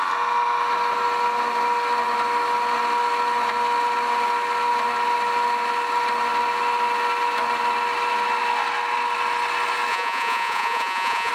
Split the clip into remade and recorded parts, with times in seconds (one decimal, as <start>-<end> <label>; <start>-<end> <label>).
0.0-9.9 recorded; 9.9-11.3 remade